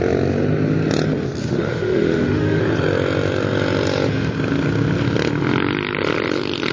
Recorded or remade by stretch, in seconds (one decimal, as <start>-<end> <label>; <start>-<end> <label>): 0.0-1.4 recorded; 1.4-2.6 remade; 2.6-6.7 recorded